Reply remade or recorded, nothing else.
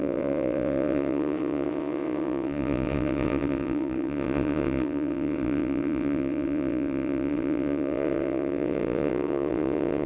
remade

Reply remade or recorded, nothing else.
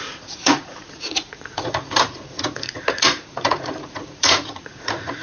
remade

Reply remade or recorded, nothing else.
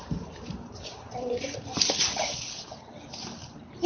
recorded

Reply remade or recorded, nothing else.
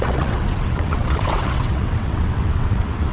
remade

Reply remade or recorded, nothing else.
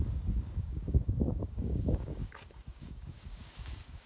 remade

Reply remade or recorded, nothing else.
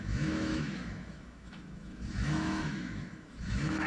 remade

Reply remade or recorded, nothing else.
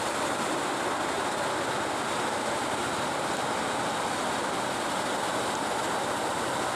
recorded